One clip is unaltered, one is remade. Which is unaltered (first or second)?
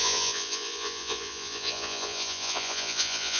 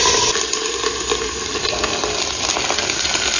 second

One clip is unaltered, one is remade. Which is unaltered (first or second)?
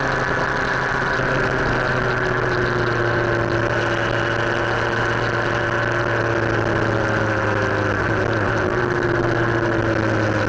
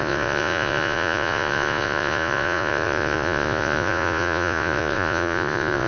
first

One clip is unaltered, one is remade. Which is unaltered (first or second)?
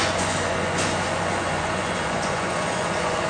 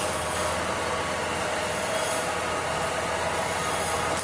second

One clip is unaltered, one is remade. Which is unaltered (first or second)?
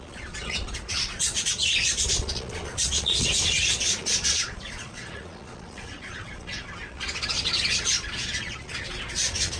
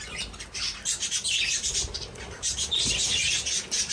second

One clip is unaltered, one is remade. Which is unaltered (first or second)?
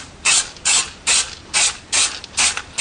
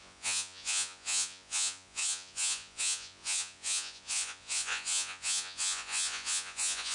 first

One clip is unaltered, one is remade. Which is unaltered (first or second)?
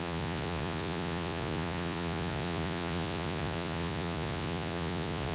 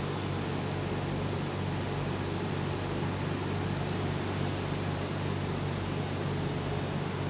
second